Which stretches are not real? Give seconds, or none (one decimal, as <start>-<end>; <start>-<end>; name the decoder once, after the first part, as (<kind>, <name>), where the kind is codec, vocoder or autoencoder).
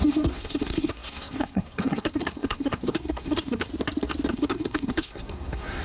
0.0-3.7 (codec, SNAC); 4.3-5.8